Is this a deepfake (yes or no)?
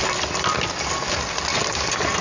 no